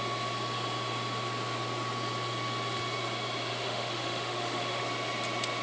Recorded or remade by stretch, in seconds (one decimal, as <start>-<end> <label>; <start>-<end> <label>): 0.0-3.5 recorded; 3.5-4.8 remade; 4.8-5.6 recorded